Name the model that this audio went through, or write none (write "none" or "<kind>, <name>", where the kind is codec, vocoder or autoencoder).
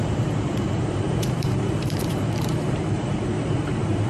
vocoder, BigVGAN v2